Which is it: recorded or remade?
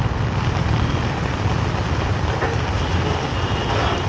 recorded